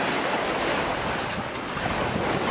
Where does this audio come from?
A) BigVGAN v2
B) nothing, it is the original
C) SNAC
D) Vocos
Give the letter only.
B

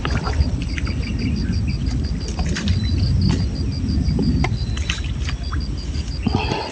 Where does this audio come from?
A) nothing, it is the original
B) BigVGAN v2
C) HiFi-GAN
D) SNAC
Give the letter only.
A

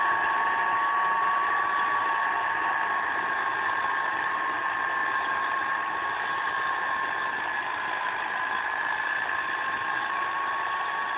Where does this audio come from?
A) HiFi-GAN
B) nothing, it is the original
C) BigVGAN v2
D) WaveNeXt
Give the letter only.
B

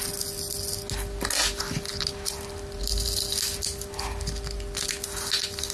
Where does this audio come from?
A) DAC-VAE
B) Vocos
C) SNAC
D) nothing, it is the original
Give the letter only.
D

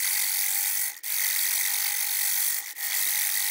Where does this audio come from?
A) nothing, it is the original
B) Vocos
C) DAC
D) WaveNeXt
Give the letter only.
A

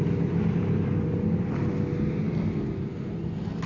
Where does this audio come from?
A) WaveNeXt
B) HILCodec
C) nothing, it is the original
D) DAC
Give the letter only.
C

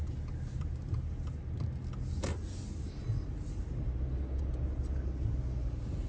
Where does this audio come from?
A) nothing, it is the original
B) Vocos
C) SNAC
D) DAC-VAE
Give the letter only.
A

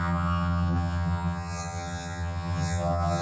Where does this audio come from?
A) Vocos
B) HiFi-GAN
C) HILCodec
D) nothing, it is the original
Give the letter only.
B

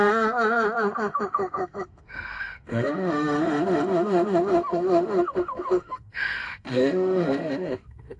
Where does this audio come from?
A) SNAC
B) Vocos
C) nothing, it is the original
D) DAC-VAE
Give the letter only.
D